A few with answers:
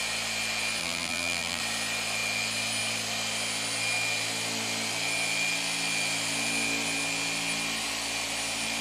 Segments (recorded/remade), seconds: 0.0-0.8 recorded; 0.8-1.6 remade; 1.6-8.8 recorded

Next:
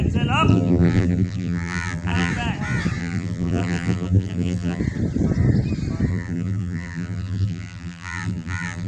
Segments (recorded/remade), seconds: 0.0-0.5 recorded; 0.5-2.3 remade; 2.3-3.0 recorded; 3.0-4.8 remade; 4.8-6.1 recorded; 6.1-8.9 remade

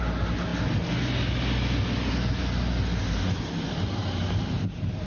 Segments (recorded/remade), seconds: 0.0-4.0 recorded; 4.0-5.1 remade

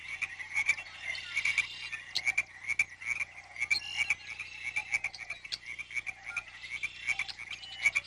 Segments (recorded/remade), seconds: 0.0-1.4 remade; 1.4-8.1 recorded

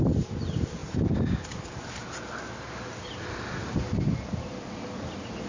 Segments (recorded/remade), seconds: 0.0-5.5 recorded

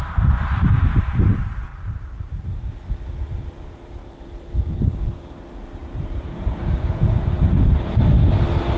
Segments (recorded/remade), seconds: 0.0-1.7 recorded; 1.7-2.7 remade; 2.7-4.0 recorded; 4.0-4.9 remade; 4.9-5.8 recorded; 5.8-8.0 remade; 8.0-8.8 recorded

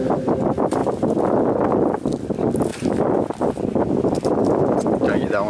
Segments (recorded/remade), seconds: 0.0-0.8 remade; 0.8-2.0 recorded; 2.0-5.5 remade